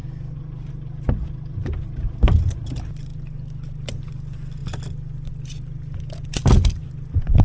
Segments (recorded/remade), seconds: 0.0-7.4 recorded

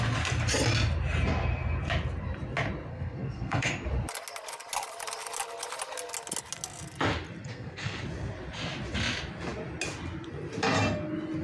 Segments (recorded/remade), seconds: 0.0-2.9 recorded; 2.9-3.7 remade; 3.7-7.5 recorded; 7.5-8.0 remade; 8.0-11.4 recorded

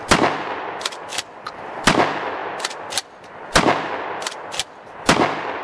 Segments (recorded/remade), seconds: 0.0-1.1 recorded; 1.1-1.8 remade; 1.8-5.6 recorded